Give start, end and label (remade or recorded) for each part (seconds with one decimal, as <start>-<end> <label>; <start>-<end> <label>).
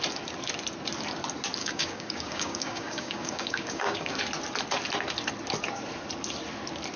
0.0-1.6 recorded; 1.6-4.2 remade; 4.2-7.0 recorded